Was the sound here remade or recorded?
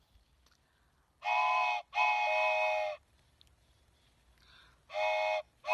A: recorded